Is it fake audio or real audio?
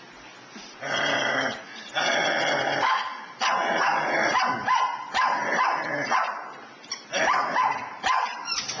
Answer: real